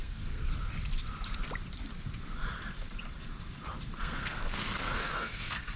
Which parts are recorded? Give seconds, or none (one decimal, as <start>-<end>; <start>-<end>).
0.5-4.0